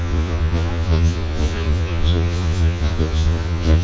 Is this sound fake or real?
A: fake